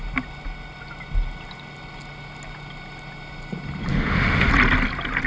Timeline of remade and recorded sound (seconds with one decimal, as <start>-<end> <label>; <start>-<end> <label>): 0.0-3.9 recorded; 3.9-4.5 remade; 4.5-5.3 recorded